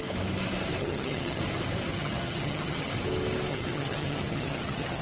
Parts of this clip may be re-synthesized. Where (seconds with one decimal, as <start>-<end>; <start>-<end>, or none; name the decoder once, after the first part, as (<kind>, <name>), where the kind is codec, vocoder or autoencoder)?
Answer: 0.8-1.4 (vocoder, HiFi-GAN); 1.9-2.9; 3.5-5.0